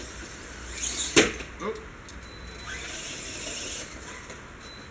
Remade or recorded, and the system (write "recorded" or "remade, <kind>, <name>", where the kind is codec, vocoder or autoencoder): recorded